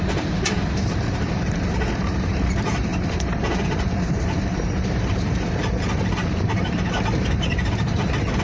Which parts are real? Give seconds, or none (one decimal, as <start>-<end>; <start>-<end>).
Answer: 2.9-3.6